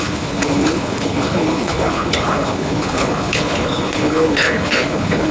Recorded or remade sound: remade